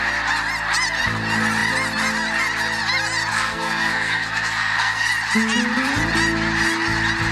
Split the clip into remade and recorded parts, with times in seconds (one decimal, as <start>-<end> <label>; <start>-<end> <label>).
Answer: 0.0-3.3 recorded; 3.3-5.1 remade; 5.1-7.3 recorded